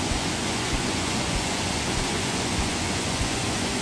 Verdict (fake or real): fake